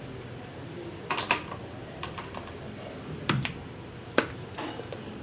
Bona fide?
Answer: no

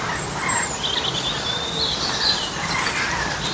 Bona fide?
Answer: yes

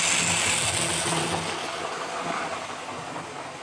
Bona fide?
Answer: yes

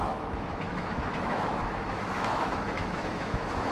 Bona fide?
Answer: no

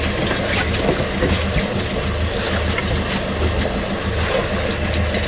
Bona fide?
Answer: yes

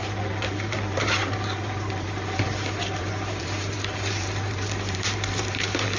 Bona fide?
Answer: no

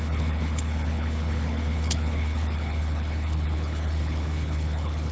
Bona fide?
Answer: no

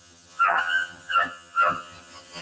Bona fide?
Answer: no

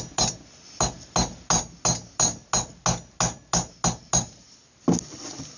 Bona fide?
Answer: yes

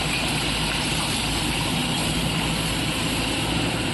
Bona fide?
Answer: no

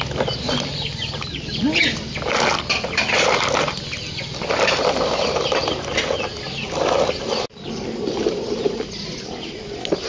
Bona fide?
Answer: yes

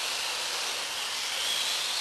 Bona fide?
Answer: yes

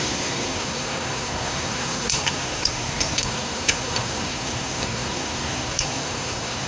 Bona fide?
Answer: no